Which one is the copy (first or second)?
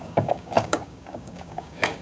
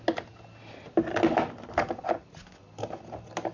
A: first